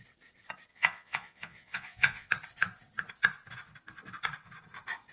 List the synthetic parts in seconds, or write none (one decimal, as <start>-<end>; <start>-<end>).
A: 0.7-2.3